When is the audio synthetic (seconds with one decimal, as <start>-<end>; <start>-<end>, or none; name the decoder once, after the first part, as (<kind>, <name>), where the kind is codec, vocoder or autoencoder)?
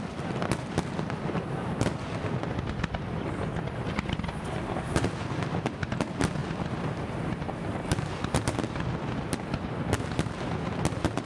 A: none